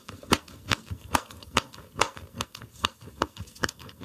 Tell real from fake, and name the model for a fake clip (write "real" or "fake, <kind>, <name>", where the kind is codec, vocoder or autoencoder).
fake, codec, SNAC